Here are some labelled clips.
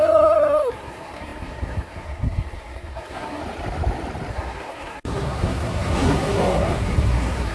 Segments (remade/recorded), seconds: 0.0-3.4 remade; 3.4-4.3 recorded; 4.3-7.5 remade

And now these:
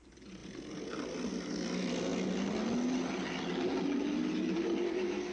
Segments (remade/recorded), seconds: 0.0-5.3 recorded

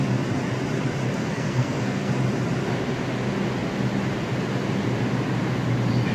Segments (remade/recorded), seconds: 0.0-1.2 recorded; 1.2-2.1 remade; 2.1-6.1 recorded

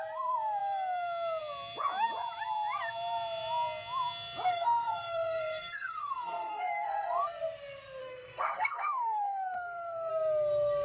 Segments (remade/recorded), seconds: 0.0-4.5 recorded; 4.5-7.4 remade; 7.4-8.0 recorded; 8.0-10.1 remade; 10.1-10.8 recorded

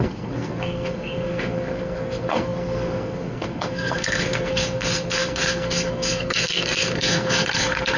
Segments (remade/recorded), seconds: 0.0-8.0 remade

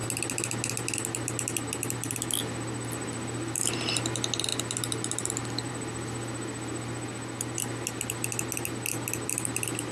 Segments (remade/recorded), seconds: 0.0-9.9 recorded

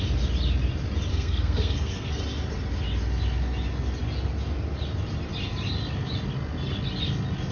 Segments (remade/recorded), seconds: 0.0-1.1 recorded; 1.1-2.2 remade; 2.2-7.5 recorded

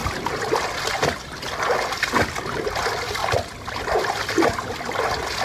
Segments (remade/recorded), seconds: 0.0-5.4 recorded